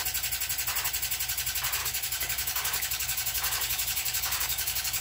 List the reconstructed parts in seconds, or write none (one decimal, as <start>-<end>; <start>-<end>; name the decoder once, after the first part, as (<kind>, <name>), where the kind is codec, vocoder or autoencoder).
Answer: 1.8-5.0 (codec, DAC)